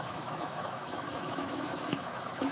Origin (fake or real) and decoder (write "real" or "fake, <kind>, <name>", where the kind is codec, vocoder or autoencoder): fake, autoencoder, DAC-VAE